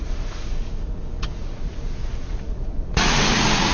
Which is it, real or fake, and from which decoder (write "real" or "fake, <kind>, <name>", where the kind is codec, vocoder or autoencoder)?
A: fake, vocoder, Vocos